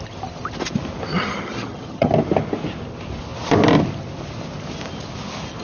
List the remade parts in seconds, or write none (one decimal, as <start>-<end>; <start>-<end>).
1.1-2.1